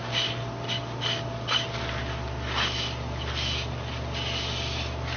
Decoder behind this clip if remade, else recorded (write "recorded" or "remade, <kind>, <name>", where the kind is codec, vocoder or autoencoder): recorded